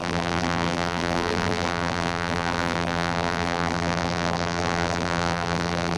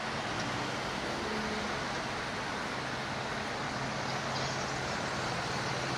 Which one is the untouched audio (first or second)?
second